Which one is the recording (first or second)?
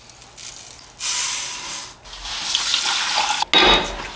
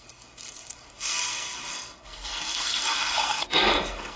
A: first